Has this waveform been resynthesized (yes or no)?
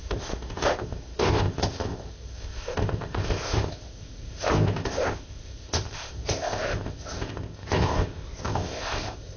yes